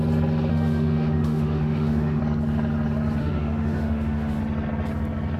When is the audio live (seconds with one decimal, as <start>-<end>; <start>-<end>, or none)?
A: 0.0-0.5; 2.2-3.2; 4.4-5.4